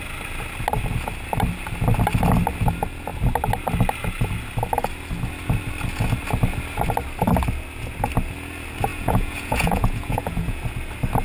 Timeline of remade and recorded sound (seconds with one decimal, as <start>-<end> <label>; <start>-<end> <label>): 0.0-8.9 recorded; 8.9-10.6 remade; 10.6-11.2 recorded